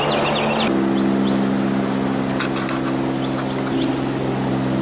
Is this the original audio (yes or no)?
yes